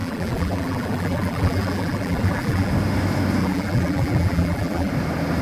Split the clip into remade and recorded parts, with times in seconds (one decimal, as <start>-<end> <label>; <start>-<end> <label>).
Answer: 0.0-2.7 remade; 2.7-3.4 recorded; 3.4-4.9 remade; 4.9-5.4 recorded